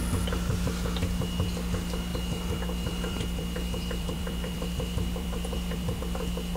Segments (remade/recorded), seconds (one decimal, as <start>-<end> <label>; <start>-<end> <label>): 0.0-2.1 recorded; 2.1-6.0 remade; 6.0-6.6 recorded